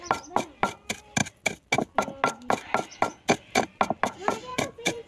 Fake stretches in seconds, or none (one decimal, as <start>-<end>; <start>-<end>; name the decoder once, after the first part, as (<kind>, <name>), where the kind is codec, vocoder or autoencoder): 4.5-5.1 (vocoder, Vocos)